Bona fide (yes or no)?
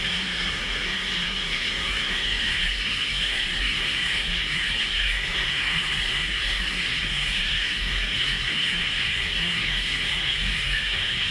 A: no